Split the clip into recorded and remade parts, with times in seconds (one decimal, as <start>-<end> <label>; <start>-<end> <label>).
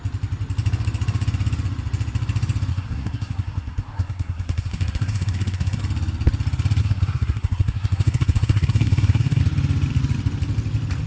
0.0-2.7 recorded; 2.7-5.8 remade; 5.8-6.8 recorded; 6.8-9.4 remade; 9.4-11.1 recorded